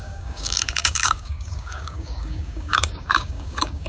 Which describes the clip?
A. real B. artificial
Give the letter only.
B